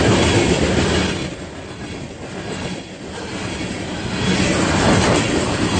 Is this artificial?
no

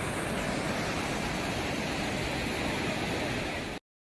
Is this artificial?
no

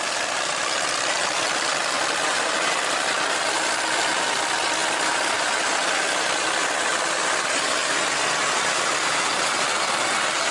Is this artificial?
no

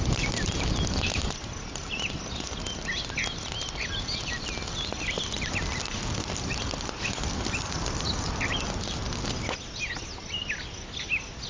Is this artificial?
no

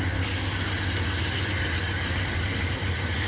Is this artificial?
no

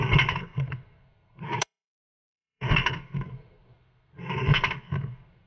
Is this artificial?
yes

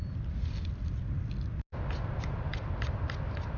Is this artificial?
no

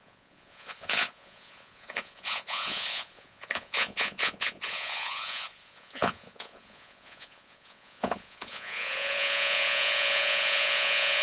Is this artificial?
yes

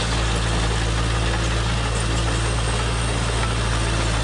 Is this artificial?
no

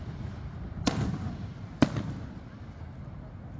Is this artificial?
no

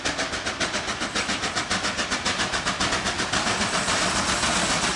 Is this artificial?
no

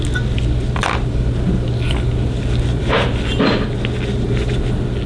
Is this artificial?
no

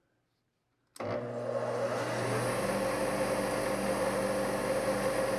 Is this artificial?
no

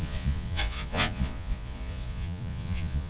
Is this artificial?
yes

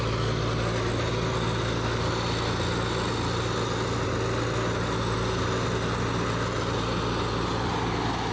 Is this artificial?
no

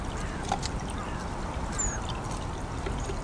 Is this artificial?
no